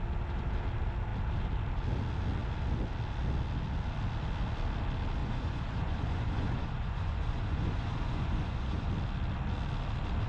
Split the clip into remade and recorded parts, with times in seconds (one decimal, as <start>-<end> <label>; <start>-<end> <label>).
0.0-5.2 recorded; 5.2-8.9 remade; 8.9-10.3 recorded